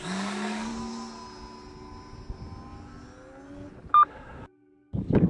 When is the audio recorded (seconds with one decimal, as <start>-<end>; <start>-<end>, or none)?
0.7-3.9